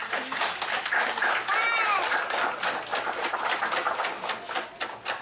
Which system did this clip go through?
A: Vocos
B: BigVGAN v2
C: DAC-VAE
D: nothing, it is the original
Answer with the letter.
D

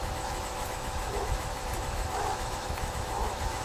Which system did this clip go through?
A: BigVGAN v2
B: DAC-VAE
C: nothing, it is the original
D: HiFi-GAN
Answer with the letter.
B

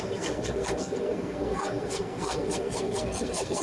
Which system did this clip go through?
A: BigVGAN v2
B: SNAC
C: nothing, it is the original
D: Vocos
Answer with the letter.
B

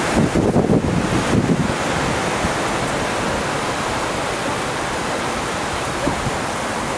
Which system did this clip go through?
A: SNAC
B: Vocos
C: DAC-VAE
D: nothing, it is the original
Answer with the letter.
D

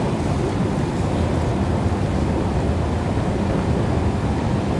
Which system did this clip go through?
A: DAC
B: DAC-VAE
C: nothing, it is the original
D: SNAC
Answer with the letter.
C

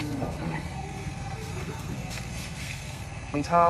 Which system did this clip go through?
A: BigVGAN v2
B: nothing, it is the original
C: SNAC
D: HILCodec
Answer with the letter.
C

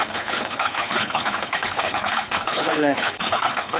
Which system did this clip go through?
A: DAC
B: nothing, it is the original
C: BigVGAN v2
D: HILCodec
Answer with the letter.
D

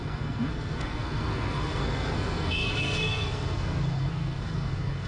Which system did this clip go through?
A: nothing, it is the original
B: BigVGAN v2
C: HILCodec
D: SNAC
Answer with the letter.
D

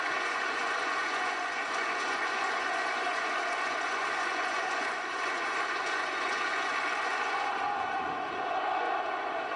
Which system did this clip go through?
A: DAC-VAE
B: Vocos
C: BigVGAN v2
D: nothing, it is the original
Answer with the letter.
B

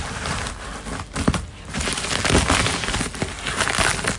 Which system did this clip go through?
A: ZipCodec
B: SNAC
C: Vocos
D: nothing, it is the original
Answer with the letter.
D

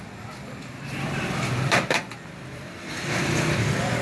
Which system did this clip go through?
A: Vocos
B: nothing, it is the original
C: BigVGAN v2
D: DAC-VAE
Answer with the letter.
C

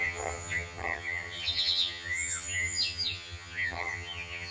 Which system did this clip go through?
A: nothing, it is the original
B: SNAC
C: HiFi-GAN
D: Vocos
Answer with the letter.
C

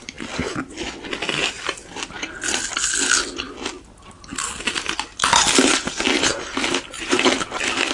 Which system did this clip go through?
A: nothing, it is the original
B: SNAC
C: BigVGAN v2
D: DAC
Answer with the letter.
A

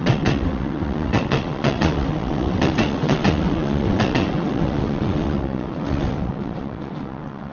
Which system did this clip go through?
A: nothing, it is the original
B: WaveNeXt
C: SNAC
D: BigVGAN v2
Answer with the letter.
B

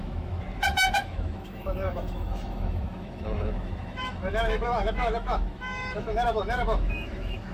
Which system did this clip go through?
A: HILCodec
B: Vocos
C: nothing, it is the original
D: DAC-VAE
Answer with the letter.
D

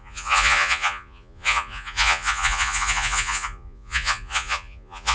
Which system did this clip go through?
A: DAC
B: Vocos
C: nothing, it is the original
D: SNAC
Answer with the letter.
B